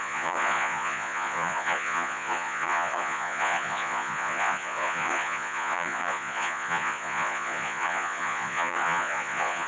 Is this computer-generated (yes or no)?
yes